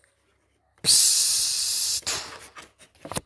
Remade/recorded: recorded